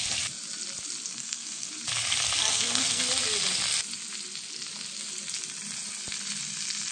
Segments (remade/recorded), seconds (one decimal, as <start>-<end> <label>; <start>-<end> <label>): 0.0-1.1 recorded; 1.1-1.7 remade; 1.7-2.5 recorded; 2.5-3.1 remade; 3.1-6.9 recorded